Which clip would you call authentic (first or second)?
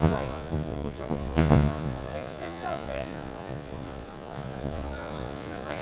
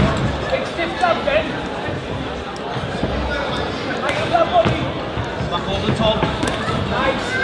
second